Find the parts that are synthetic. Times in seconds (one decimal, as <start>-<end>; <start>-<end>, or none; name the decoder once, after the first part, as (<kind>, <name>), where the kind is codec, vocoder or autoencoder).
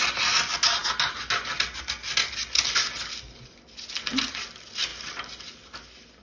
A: none